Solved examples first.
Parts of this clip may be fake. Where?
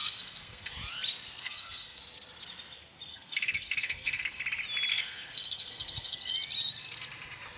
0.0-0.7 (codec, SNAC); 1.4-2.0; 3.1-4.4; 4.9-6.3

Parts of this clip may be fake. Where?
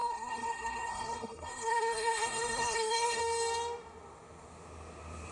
0.0-3.2 (codec, SNAC)